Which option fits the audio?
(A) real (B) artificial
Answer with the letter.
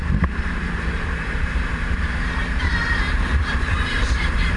B